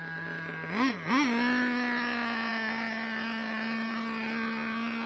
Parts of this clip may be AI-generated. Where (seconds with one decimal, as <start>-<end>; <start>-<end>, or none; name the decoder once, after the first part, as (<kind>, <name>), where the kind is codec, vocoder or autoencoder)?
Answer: none